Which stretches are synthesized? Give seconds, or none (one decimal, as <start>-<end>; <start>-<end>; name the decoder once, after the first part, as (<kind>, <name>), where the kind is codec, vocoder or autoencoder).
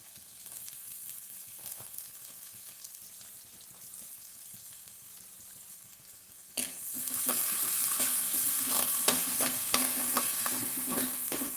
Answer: 0.0-3.0 (codec, SNAC); 4.1-5.1; 5.7-11.6